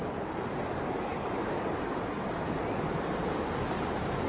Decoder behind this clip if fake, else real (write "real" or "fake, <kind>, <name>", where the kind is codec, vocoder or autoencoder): real